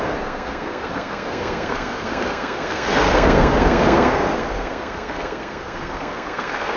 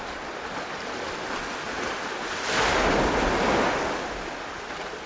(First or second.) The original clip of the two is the second